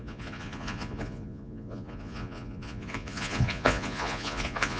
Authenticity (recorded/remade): remade